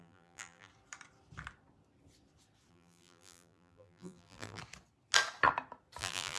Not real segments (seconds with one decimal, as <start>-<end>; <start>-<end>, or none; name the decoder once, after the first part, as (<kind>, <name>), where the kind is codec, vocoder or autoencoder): 0.0-0.7 (vocoder, BigVGAN v2); 2.7-4.6; 6.0-6.4